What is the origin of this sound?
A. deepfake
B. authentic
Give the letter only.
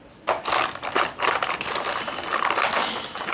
B